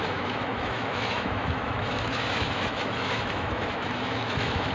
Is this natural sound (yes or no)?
no